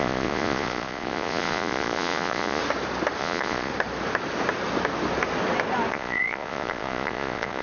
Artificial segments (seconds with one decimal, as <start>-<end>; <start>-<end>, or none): 0.0-2.6; 3.2-3.7; 5.9-7.6